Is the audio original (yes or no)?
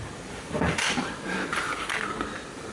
yes